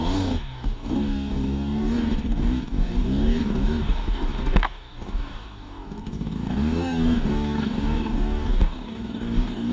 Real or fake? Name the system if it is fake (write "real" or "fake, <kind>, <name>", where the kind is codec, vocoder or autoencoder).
fake, codec, DAC